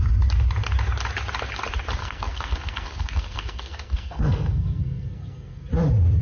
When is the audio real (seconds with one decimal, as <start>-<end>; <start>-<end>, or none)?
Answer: 0.0-2.0; 5.7-6.2